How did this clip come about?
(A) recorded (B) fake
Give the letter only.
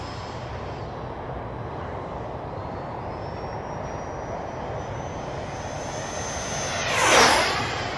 A